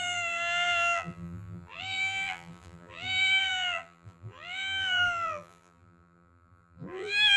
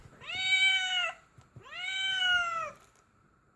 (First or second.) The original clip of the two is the second